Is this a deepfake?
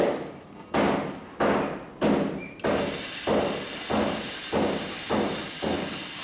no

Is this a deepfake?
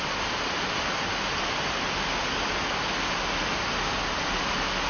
no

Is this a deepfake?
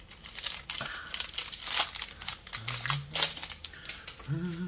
no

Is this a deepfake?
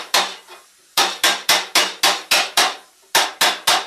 no